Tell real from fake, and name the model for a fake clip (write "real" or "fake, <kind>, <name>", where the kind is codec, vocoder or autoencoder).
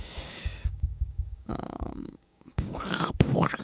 fake, codec, DAC